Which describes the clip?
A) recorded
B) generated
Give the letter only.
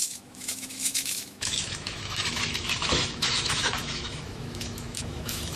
B